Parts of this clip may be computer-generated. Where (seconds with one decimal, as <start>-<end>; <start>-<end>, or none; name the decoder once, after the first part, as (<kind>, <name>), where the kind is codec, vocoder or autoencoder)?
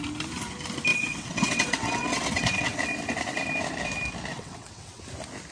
0.9-2.8 (vocoder, WaveNeXt); 4.3-5.0